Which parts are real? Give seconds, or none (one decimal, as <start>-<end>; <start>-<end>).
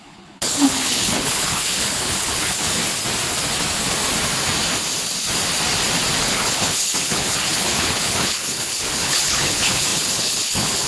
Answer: 2.8-6.2